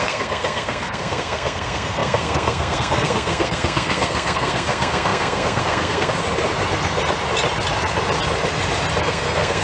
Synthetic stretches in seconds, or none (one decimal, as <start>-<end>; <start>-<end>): 0.0-6.2; 9.0-9.6